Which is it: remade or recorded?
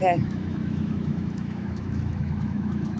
remade